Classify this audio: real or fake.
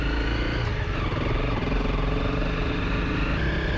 real